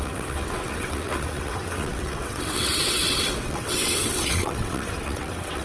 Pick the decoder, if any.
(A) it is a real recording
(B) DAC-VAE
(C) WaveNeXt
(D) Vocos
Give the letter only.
C